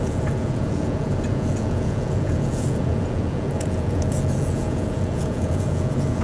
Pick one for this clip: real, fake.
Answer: fake